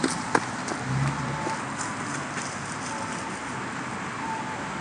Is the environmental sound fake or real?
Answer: real